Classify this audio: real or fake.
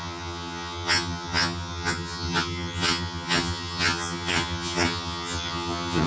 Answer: fake